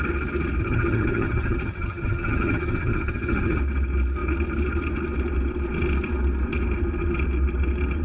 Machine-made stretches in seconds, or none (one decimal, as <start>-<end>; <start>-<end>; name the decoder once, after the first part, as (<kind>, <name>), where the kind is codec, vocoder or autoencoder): 0.6-3.6 (vocoder, HiFi-GAN)

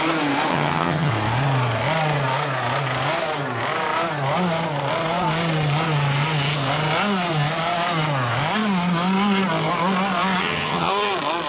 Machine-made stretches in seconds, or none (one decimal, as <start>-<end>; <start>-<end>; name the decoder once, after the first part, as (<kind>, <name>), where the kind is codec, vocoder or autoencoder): 0.5-1.1 (vocoder, HiFi-GAN); 10.4-10.9

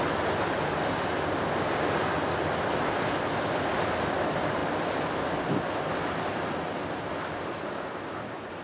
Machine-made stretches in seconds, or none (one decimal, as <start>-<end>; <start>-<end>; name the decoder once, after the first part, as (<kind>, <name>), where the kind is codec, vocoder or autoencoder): none

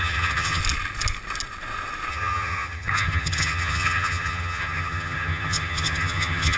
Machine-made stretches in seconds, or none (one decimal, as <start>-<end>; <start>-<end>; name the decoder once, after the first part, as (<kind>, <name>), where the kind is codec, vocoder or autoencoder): 0.0-0.6 (vocoder, HiFi-GAN); 2.1-6.6